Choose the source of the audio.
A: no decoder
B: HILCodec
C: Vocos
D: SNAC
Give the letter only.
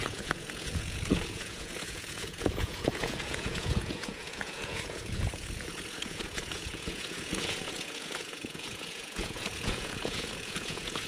C